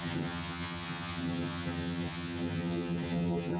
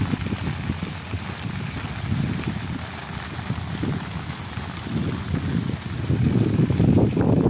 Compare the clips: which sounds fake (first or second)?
first